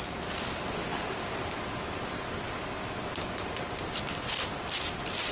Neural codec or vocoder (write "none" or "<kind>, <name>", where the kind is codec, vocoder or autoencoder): none